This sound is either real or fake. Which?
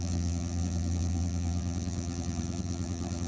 fake